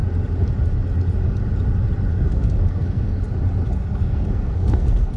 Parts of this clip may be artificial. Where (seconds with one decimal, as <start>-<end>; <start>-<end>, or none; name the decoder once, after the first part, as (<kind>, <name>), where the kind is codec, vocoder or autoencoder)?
2.1-3.2 (codec, SNAC); 3.8-5.2